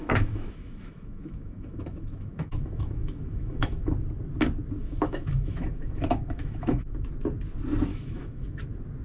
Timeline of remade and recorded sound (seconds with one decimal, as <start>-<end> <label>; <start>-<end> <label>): 0.0-3.9 remade; 3.9-4.8 recorded; 4.8-7.1 remade; 7.1-7.9 recorded; 7.9-8.6 remade; 8.6-9.0 recorded